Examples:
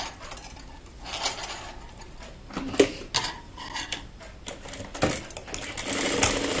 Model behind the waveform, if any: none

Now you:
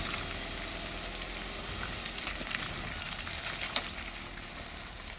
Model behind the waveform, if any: none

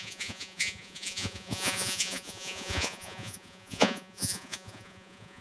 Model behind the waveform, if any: vocoder, Vocos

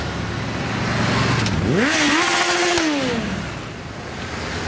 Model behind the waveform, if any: none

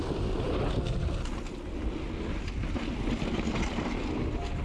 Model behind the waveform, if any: none